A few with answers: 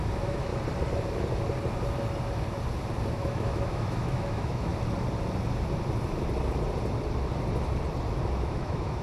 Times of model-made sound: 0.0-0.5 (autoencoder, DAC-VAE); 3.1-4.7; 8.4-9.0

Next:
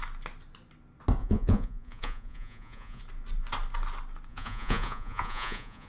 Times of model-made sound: 1.2-3.0 (vocoder, Vocos); 4.3-5.9

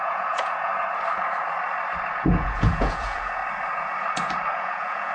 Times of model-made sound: 0.0-0.7 (vocoder, Vocos); 2.2-3.4; 4.5-5.1

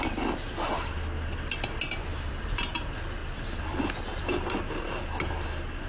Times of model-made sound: 2.0-2.7 (vocoder, BigVGAN v2); 3.2-3.9

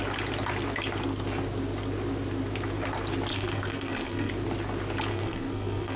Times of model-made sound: 3.3-4.3 (codec, SNAC); 5.1-6.0

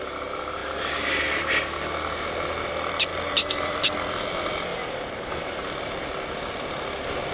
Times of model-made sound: 3.1-3.9 (vocoder, BigVGAN v2); 4.7-5.7